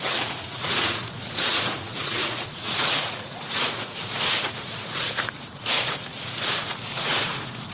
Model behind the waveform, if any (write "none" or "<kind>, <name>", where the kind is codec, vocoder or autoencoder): vocoder, Vocos